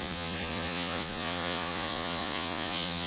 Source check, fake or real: fake